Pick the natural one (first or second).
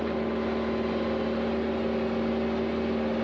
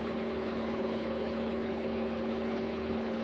first